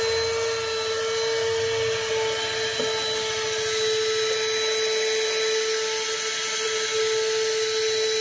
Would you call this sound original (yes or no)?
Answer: yes